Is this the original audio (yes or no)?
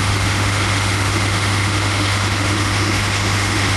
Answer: no